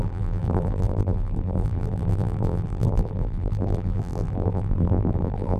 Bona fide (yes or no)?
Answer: no